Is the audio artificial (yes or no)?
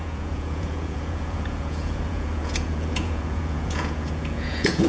yes